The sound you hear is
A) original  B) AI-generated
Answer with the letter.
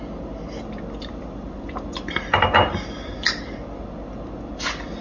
A